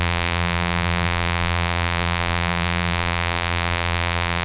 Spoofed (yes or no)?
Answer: yes